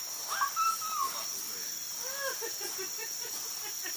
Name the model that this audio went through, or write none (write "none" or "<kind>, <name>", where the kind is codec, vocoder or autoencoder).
none